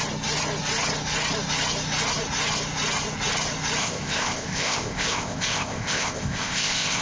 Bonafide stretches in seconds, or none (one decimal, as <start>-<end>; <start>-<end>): 0.0-3.8